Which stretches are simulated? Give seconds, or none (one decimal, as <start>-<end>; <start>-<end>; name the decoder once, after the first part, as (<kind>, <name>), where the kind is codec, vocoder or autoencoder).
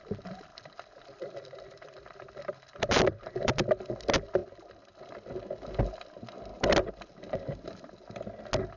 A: 0.5-3.5 (vocoder, BigVGAN v2); 4.4-5.0; 6.5-8.2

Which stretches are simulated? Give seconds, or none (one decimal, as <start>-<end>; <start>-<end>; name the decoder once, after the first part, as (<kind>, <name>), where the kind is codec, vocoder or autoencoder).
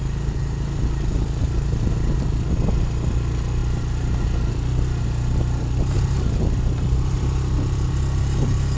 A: none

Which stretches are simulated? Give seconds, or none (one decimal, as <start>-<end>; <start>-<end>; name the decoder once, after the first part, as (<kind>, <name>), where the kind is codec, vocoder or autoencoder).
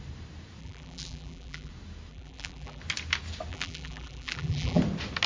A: 0.6-1.7 (vocoder, BigVGAN v2); 2.1-2.8; 3.5-4.8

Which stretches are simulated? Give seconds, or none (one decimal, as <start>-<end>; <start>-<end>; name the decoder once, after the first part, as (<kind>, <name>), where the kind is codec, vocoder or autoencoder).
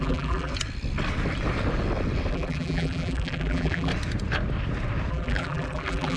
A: 0.0-0.5 (vocoder, BigVGAN v2); 2.3-3.9; 5.1-6.2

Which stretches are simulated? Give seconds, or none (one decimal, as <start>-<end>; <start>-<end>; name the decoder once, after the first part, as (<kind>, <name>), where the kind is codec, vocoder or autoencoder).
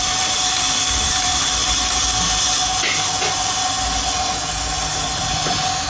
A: 0.0-1.6 (vocoder, BigVGAN v2); 5.1-5.9